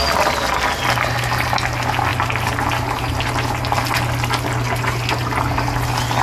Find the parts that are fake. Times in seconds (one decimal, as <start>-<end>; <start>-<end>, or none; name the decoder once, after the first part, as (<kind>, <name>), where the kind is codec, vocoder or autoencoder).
none